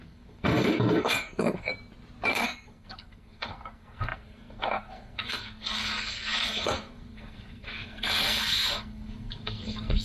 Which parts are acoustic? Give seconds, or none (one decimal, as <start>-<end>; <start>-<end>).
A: 1.7-2.3